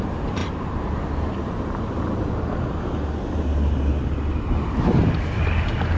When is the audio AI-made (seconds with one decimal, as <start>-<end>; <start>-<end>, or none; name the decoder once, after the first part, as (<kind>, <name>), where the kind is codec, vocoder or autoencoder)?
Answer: none